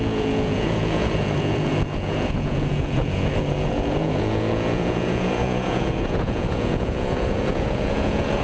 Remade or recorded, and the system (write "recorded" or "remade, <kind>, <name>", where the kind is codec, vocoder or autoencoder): remade, vocoder, Vocos